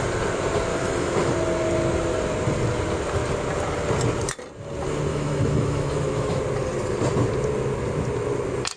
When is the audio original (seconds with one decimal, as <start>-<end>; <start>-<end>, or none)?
0.0-0.7; 1.3-5.1; 6.4-8.8